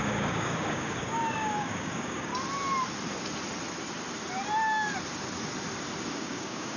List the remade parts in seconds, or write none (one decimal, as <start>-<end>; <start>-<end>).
0.0-2.3; 6.1-6.8